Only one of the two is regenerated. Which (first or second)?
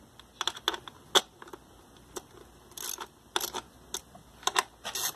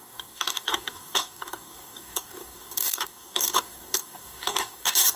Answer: second